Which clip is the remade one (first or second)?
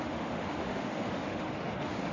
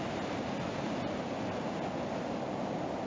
first